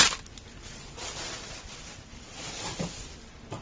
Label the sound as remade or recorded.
recorded